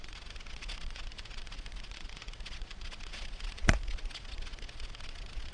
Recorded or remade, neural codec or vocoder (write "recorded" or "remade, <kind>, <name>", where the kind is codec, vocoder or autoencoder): remade, vocoder, Vocos